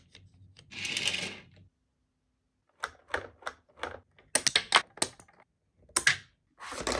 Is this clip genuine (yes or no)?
yes